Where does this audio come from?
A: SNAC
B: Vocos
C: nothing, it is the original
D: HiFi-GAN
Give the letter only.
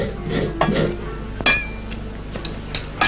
C